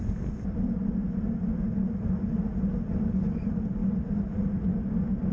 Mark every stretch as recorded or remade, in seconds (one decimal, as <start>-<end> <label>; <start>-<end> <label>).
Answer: 0.0-3.8 recorded; 3.8-4.6 remade; 4.6-5.3 recorded